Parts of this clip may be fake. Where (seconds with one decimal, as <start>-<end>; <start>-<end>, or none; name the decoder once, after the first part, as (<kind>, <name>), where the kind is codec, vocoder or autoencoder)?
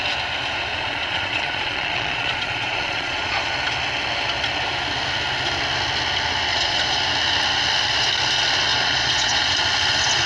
0.7-3.5 (vocoder, Vocos); 6.5-7.0; 8.7-9.5